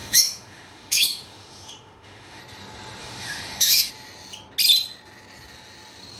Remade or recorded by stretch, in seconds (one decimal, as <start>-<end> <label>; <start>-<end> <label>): 0.0-2.4 remade; 2.4-3.0 recorded; 3.0-3.9 remade; 3.9-6.2 recorded